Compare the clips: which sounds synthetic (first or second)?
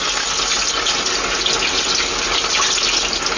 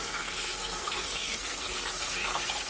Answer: second